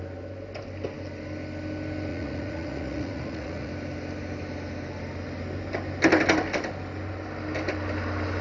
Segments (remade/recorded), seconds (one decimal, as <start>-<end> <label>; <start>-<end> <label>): 0.0-2.1 recorded; 2.1-3.7 remade; 3.7-8.4 recorded